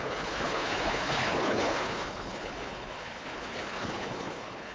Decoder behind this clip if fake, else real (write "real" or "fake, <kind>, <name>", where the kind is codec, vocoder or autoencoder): fake, codec, HILCodec